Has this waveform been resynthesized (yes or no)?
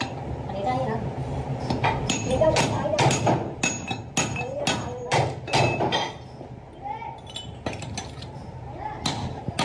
no